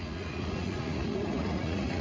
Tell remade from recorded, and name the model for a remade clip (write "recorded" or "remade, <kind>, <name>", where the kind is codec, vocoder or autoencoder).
remade, vocoder, Vocos